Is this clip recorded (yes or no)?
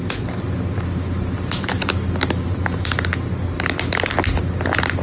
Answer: yes